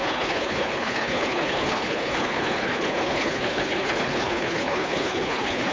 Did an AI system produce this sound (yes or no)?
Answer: yes